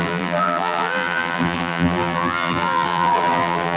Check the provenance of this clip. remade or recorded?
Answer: remade